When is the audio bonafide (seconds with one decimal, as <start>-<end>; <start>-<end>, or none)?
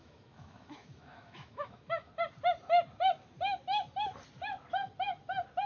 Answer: 2.1-5.7